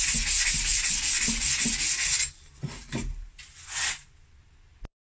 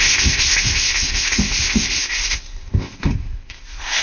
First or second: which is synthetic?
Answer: second